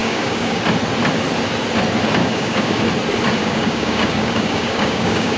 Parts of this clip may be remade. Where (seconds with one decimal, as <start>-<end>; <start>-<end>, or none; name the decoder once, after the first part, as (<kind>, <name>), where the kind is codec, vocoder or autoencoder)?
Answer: 0.0-0.6 (codec, DAC); 2.2-2.8; 3.4-5.4